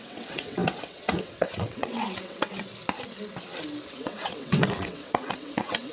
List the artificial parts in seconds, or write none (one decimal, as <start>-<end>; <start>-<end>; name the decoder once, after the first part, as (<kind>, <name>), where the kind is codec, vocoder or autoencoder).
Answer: 0.0-2.7 (vocoder, WaveNeXt); 3.9-5.9